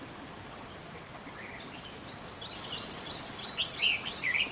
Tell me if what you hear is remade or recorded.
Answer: recorded